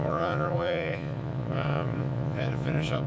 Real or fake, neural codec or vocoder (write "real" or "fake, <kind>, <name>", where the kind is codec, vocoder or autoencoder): fake, vocoder, Vocos